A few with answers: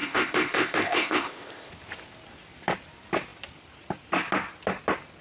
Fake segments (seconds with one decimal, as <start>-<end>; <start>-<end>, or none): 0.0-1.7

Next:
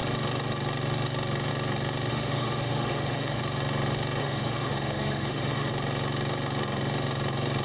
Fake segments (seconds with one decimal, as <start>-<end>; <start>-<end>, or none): 2.1-3.4; 4.2-5.7

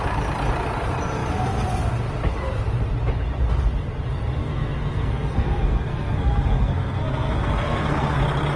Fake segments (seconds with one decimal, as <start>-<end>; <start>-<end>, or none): 4.4-8.2

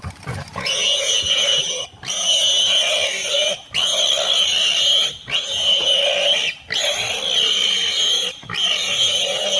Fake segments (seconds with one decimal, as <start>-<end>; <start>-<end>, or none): 0.5-1.8